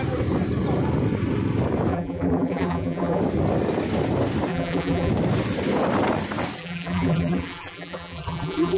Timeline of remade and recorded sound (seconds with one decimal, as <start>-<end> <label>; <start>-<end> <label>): 0.0-1.9 recorded; 1.9-3.2 remade; 3.2-4.5 recorded; 4.5-5.1 remade; 5.1-6.6 recorded; 6.6-8.8 remade